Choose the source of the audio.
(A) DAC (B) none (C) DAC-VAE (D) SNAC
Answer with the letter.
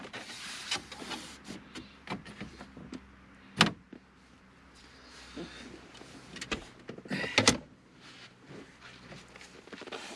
B